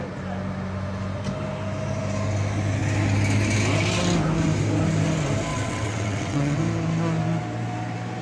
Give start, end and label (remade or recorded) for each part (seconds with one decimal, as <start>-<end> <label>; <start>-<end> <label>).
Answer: 0.0-5.5 recorded; 5.5-6.6 remade; 6.6-8.2 recorded